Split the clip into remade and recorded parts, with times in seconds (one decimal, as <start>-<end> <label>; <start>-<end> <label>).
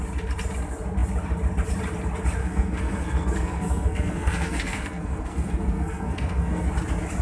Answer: 0.0-2.4 recorded; 2.4-6.7 remade; 6.7-7.2 recorded